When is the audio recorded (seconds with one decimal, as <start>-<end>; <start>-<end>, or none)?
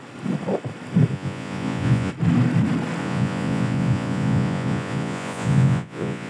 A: 0.0-1.1; 2.1-3.0